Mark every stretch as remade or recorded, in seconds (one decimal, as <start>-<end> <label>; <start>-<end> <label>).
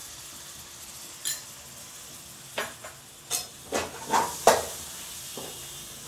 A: 0.0-1.1 remade; 1.1-6.1 recorded